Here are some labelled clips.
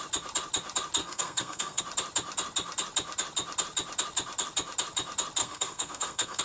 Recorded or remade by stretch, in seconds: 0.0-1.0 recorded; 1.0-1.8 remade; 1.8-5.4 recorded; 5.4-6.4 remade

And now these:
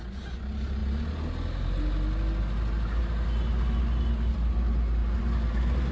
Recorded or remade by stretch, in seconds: 0.0-5.9 recorded

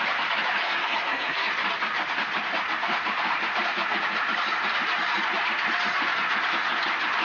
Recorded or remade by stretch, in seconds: 0.0-0.6 recorded; 0.6-1.5 remade; 1.5-7.2 recorded

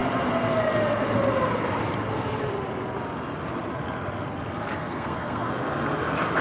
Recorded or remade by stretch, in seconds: 0.0-4.8 recorded; 4.8-5.5 remade; 5.5-6.4 recorded

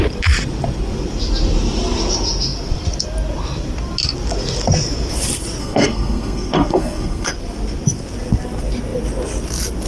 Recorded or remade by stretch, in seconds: 0.0-5.6 recorded; 5.6-7.3 remade; 7.3-9.9 recorded

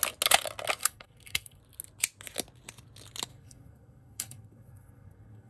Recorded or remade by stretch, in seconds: 0.0-0.8 recorded; 0.8-1.6 remade; 1.6-3.3 recorded; 3.3-5.5 remade

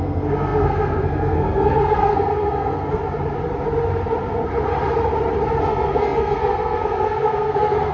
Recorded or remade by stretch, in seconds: 0.0-3.0 remade; 3.0-5.6 recorded; 5.6-7.9 remade